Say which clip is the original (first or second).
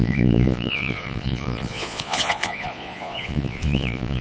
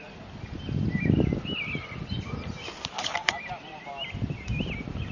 second